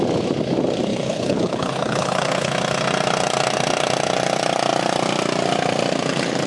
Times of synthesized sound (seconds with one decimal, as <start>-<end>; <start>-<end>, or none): 0.9-2.5